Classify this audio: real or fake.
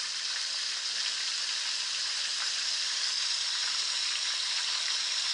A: real